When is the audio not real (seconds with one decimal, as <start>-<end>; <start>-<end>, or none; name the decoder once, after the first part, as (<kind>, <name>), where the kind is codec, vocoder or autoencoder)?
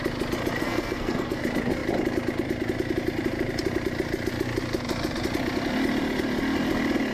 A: 0.6-1.4 (codec, SNAC)